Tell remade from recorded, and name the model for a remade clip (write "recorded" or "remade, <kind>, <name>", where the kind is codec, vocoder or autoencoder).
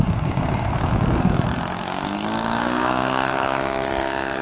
remade, codec, DAC